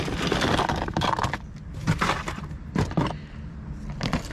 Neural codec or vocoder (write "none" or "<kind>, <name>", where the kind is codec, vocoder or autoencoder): none